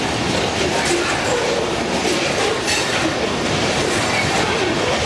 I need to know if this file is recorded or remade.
recorded